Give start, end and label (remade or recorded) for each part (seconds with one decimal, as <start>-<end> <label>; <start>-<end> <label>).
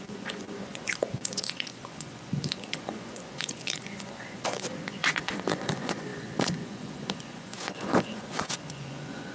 0.0-9.3 remade